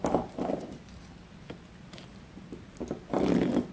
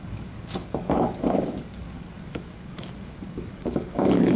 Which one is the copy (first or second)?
second